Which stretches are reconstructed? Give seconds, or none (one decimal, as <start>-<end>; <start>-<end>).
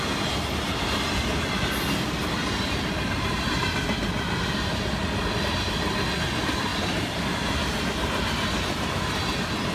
none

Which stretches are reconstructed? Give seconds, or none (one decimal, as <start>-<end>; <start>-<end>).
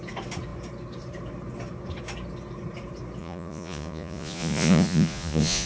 3.2-5.7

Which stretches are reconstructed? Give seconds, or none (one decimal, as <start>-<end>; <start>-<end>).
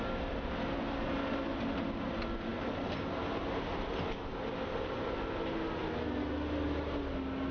none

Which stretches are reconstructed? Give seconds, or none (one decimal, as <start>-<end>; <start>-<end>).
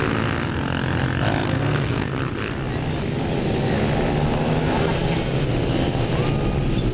1.4-2.2